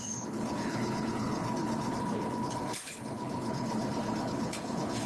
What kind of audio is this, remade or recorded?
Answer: remade